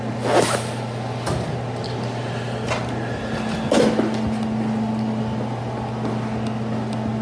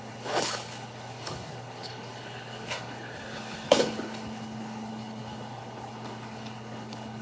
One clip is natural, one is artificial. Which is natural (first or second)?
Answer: first